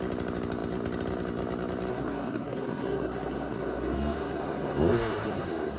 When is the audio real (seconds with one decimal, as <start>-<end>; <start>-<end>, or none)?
0.0-1.9